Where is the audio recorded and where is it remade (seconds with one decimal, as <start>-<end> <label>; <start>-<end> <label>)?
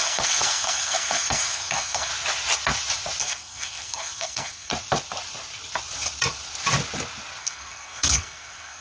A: 0.0-2.1 remade; 2.1-3.2 recorded; 3.2-4.7 remade; 4.7-7.4 recorded; 7.4-8.8 remade